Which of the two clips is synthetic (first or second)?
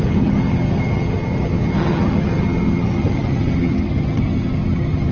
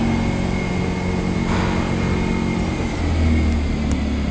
first